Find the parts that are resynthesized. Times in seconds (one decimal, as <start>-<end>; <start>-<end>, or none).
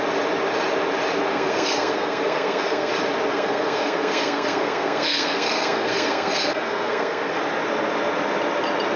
1.3-2.9; 3.3-7.4